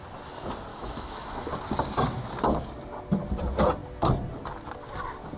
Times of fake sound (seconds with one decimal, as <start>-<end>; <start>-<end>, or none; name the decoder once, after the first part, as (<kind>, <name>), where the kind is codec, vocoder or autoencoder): 0.7-1.5 (autoencoder, DAC-VAE)